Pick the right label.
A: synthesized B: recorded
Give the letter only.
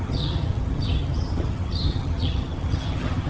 A